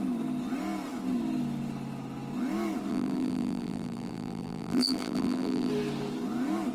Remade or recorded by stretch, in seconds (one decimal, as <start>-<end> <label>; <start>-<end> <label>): 0.0-2.9 recorded; 2.9-5.7 remade; 5.7-6.7 recorded